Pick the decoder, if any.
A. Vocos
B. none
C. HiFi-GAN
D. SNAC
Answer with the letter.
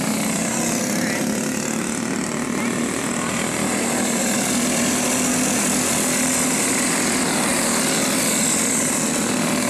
B